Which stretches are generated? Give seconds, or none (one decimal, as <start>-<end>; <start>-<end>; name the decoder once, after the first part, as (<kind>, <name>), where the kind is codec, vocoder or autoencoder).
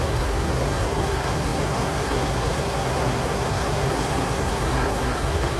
0.0-5.6 (codec, SNAC)